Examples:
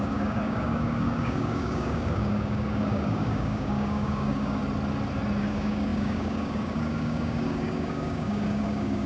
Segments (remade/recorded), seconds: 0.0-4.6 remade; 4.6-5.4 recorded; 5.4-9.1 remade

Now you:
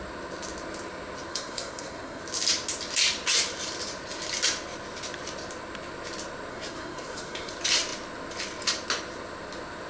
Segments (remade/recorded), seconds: 0.0-1.3 recorded; 1.3-2.2 remade; 2.2-6.5 recorded; 6.5-7.5 remade; 7.5-9.9 recorded

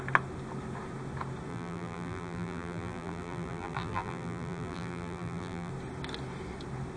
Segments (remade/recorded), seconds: 0.0-1.5 recorded; 1.5-5.7 remade; 5.7-7.0 recorded

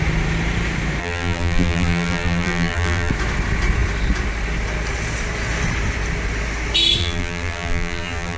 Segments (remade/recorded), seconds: 0.0-1.0 recorded; 1.0-3.1 remade; 3.1-7.0 recorded; 7.0-8.4 remade

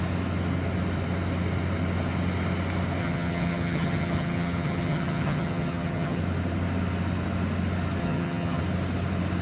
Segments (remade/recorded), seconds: 0.0-3.0 recorded; 3.0-6.2 remade; 6.2-8.0 recorded; 8.0-8.6 remade; 8.6-9.4 recorded

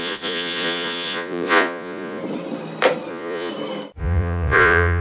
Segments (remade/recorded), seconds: 0.0-2.2 remade; 2.2-3.1 recorded; 3.1-3.5 remade; 3.5-4.0 recorded; 4.0-5.0 remade

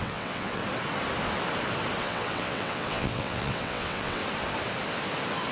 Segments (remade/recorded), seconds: 0.0-0.6 remade; 0.6-2.0 recorded; 2.0-4.2 remade; 4.2-5.5 recorded

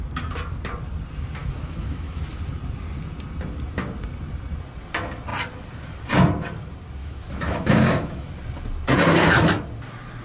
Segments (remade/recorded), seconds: 0.0-1.4 recorded; 1.4-2.2 remade; 2.2-7.0 recorded; 7.0-8.3 remade; 8.3-10.2 recorded